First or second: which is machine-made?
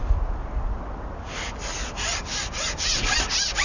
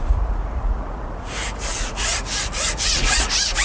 second